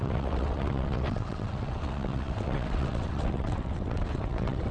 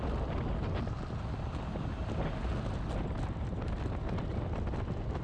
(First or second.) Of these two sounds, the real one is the second